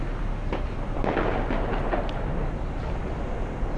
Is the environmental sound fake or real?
real